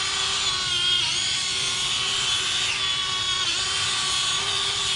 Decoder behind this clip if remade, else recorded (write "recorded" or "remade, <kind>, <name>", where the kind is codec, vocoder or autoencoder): remade, vocoder, BigVGAN v2